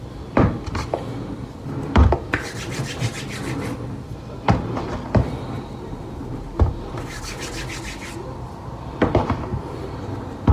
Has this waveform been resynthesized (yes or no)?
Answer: no